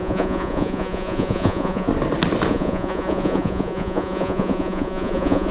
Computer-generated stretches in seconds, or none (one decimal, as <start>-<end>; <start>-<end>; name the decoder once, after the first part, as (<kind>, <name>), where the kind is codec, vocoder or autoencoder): 0.0-1.9 (vocoder, Vocos); 2.5-5.5